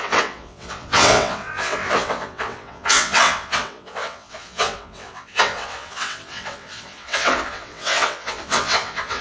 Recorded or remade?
remade